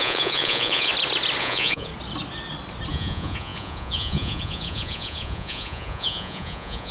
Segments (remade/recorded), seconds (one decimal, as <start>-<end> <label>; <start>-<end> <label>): 0.0-0.9 remade; 0.9-1.4 recorded; 1.4-1.9 remade; 1.9-2.9 recorded; 2.9-6.9 remade